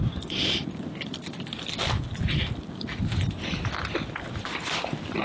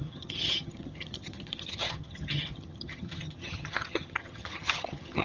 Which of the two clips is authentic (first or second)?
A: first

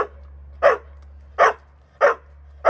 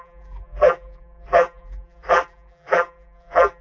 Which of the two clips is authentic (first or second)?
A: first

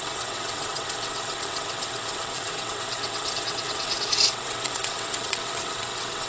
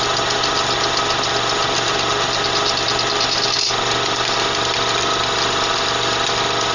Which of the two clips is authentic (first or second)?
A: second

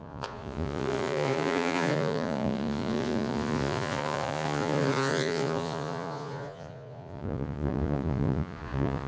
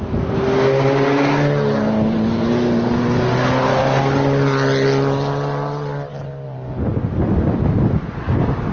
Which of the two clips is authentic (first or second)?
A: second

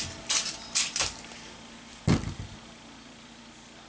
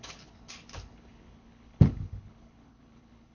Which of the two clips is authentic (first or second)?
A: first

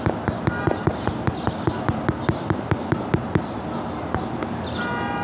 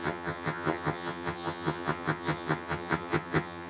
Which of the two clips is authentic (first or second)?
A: first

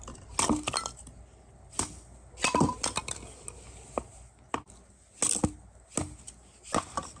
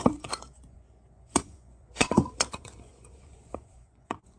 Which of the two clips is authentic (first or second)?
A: first